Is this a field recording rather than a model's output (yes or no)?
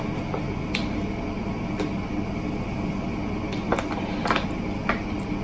yes